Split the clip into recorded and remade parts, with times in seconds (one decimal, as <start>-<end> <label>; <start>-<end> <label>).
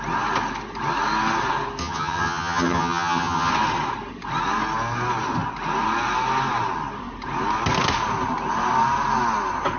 0.0-1.8 recorded; 1.8-3.5 remade; 3.5-9.8 recorded